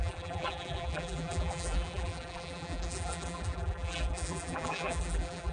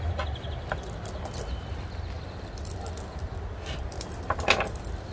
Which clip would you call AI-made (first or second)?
first